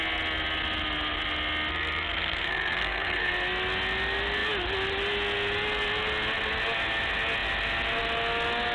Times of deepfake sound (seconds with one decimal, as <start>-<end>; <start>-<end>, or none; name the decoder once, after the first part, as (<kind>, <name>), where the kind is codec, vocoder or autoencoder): 1.7-3.3 (codec, SNAC)